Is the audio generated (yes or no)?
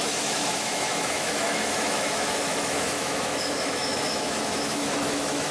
yes